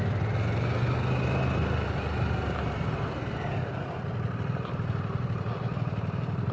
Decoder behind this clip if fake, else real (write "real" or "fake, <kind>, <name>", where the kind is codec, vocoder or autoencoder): real